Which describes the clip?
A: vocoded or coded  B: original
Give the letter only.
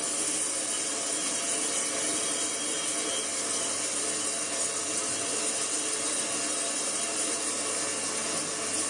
B